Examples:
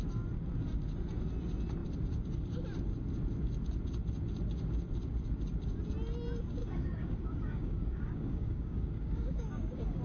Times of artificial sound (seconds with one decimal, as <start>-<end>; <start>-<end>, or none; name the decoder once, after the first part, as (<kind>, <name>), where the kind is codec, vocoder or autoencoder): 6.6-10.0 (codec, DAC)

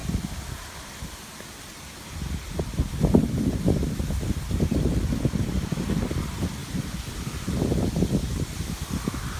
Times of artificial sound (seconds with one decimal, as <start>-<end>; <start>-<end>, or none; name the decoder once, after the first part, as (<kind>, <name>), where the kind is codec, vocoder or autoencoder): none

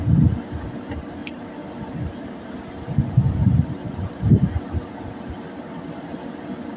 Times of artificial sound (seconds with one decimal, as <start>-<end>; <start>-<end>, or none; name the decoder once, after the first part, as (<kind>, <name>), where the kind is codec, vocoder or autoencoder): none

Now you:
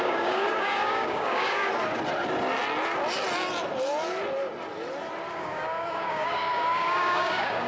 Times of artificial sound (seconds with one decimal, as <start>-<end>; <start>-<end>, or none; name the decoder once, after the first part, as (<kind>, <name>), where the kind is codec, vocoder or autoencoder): 0.0-1.7 (codec, DAC); 5.3-7.7